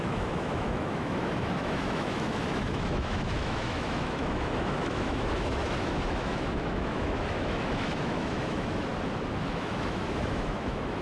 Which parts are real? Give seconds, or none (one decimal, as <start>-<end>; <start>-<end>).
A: 8.9-9.5